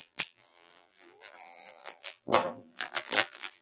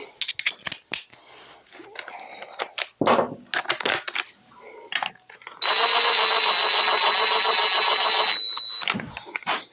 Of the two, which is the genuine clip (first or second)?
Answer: second